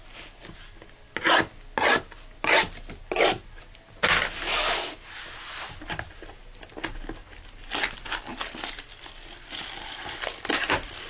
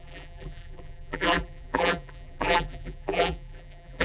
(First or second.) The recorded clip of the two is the first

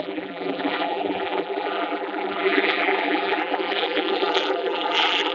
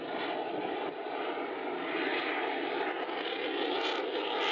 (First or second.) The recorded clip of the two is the second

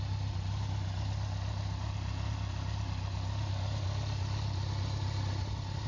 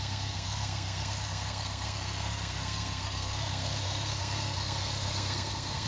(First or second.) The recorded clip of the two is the first